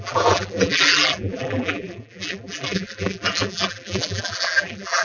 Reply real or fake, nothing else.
fake